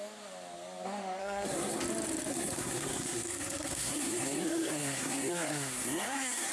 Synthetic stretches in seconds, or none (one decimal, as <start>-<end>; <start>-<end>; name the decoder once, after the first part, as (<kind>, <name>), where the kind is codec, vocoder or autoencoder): 1.2-1.8 (codec, SNAC); 2.3-6.5